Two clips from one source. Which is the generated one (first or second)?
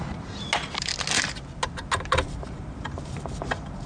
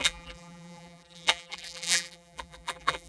second